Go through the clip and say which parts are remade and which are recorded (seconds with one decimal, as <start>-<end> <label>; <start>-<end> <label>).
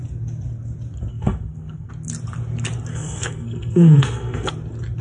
0.0-1.1 recorded; 1.1-1.9 remade; 1.9-2.9 recorded; 2.9-4.5 remade; 4.5-5.0 recorded